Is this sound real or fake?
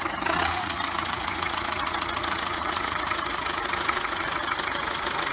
fake